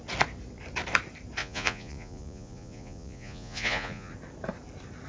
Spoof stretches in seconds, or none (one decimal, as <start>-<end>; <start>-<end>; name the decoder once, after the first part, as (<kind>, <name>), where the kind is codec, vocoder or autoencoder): 1.4-4.1 (vocoder, Vocos)